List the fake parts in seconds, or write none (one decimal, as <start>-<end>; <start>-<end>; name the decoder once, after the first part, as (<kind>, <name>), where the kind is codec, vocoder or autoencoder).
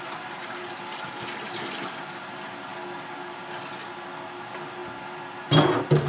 none